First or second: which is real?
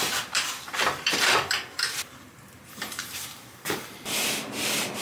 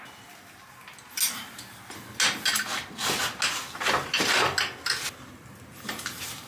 second